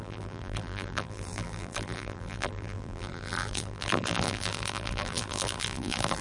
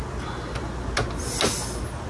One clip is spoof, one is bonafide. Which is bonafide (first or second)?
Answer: second